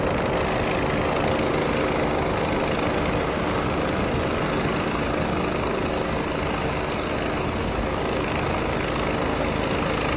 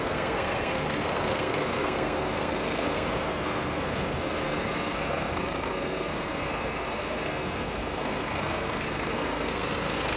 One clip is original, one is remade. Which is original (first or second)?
first